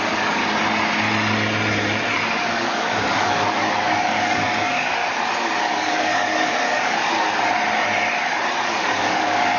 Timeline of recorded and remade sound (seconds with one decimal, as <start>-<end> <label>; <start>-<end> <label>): 0.0-0.4 remade; 0.4-2.4 recorded; 2.4-5.0 remade; 5.0-5.6 recorded; 5.6-7.3 remade; 7.3-8.6 recorded; 8.6-9.6 remade